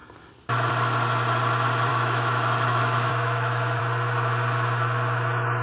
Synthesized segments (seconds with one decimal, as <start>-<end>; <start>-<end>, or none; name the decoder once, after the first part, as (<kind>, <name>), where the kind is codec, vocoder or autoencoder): 1.9-3.8 (autoencoder, DAC-VAE)